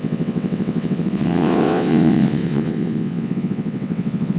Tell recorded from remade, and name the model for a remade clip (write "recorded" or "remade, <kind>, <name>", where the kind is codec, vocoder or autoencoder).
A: remade, vocoder, WaveNeXt